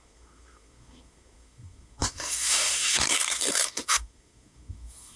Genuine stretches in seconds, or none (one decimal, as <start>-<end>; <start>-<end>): none